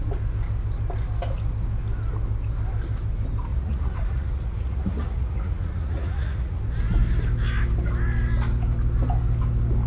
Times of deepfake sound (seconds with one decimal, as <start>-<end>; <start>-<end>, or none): 3.5-6.6